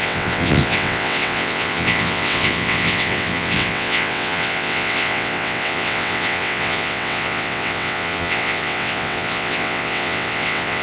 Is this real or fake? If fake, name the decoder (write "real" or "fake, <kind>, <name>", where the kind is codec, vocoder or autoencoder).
fake, vocoder, WaveNeXt